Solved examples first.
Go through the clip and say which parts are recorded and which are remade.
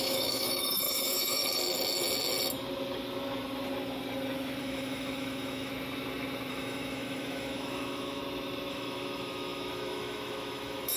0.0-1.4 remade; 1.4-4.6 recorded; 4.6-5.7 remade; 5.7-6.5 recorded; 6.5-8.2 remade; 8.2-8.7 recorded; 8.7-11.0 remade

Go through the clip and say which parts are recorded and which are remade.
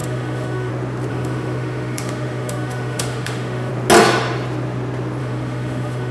0.0-0.7 remade; 0.7-1.1 recorded; 1.1-3.7 remade; 3.7-5.2 recorded; 5.2-6.1 remade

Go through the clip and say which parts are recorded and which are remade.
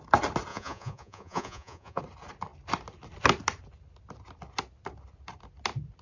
0.0-0.5 recorded; 0.5-2.0 remade; 2.0-6.0 recorded